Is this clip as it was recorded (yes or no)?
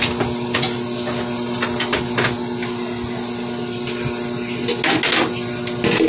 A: yes